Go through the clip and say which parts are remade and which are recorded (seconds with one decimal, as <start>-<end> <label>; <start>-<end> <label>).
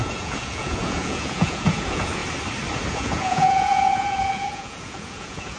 0.0-2.2 remade; 2.2-2.9 recorded; 2.9-5.6 remade